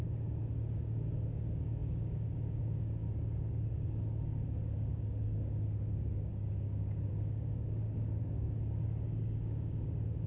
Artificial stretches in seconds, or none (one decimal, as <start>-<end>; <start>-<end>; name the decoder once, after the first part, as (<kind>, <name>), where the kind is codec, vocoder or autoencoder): 0.0-10.3 (codec, DAC)